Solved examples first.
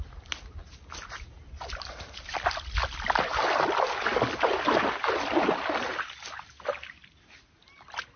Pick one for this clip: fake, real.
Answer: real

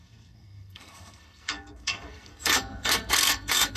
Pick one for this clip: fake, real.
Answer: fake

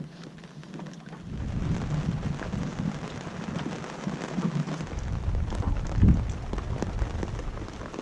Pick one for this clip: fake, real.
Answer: real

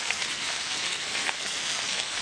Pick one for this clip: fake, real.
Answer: fake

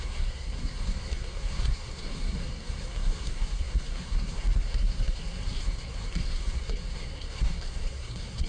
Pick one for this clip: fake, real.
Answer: fake